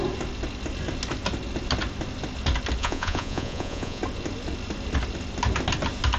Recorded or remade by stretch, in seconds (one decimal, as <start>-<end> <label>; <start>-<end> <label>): 0.0-2.8 recorded; 2.8-4.0 remade; 4.0-6.2 recorded